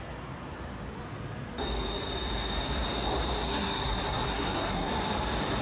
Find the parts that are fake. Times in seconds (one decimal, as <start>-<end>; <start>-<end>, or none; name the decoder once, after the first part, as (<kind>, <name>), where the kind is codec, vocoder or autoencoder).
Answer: 3.5-4.9 (codec, SNAC)

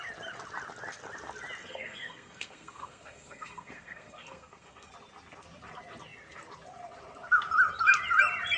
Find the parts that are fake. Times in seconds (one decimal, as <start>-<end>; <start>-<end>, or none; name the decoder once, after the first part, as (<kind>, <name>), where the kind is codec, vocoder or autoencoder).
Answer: 1.6-4.9 (codec, SNAC)